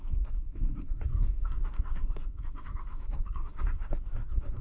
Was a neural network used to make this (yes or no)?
yes